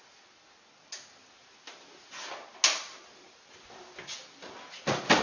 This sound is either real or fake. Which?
real